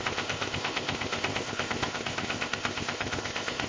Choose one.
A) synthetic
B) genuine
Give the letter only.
A